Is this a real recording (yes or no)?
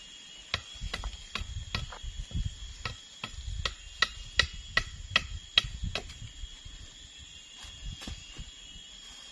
yes